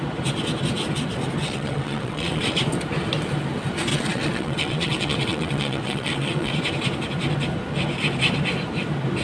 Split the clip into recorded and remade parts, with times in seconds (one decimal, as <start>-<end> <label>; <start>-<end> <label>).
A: 0.0-1.4 recorded; 1.4-2.6 remade; 2.6-3.9 recorded; 3.9-6.5 remade; 6.5-9.2 recorded